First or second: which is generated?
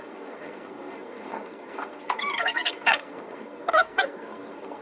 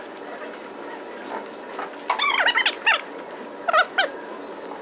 first